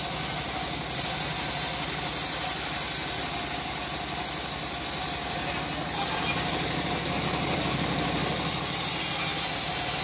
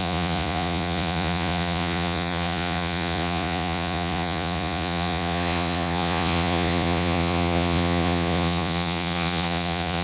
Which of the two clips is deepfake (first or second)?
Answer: second